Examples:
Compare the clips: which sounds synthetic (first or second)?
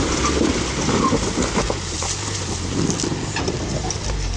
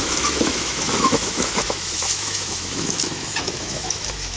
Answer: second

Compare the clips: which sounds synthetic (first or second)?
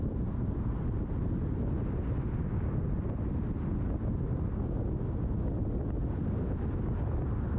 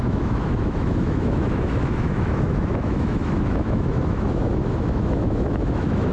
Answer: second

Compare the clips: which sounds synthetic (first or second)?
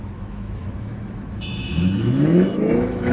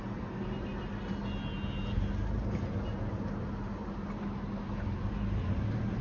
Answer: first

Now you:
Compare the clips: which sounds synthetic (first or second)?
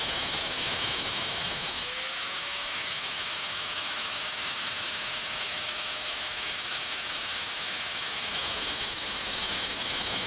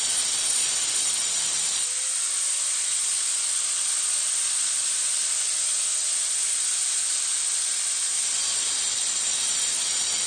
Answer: first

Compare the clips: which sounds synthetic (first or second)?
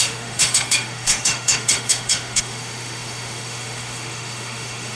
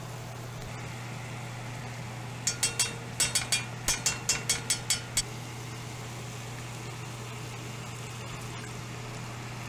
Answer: first